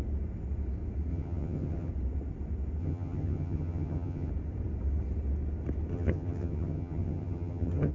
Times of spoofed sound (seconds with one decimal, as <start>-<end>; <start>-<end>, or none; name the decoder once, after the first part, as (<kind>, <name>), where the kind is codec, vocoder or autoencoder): 1.1-1.9 (vocoder, HiFi-GAN); 2.8-4.3; 5.9-7.9